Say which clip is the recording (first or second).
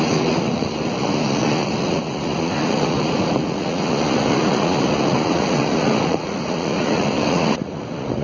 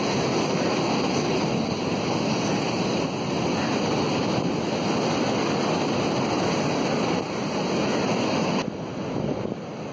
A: second